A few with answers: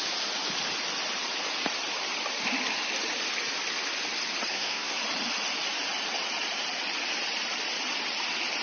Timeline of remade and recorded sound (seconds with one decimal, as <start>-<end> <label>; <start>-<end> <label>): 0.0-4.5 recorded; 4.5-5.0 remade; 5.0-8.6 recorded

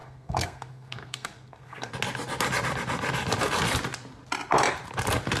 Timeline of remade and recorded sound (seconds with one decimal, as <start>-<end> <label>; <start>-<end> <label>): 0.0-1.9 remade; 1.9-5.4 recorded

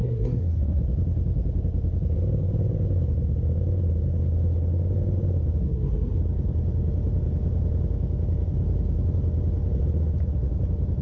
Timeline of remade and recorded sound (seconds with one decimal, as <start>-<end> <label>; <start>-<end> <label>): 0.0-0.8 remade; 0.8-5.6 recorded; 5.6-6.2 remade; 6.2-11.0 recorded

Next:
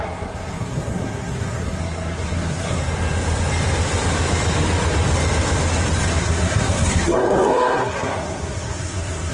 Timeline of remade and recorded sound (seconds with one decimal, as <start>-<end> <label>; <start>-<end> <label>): 0.0-2.8 remade; 2.8-6.1 recorded; 6.1-9.3 remade

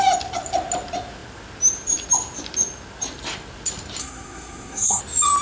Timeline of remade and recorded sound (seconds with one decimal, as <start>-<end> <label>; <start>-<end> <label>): 0.0-4.0 recorded; 4.0-5.0 remade; 5.0-5.4 recorded